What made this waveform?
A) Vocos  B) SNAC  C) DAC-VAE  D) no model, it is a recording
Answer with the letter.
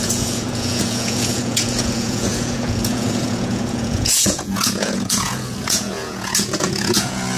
A